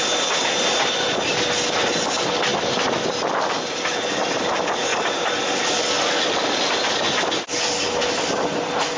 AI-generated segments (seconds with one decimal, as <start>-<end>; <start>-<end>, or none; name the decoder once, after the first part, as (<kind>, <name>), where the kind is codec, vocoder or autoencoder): 4.9-6.9 (vocoder, BigVGAN v2)